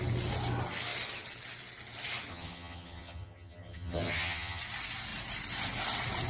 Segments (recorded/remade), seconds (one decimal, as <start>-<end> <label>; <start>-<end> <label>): 0.0-2.3 recorded; 2.3-4.6 remade; 4.6-6.3 recorded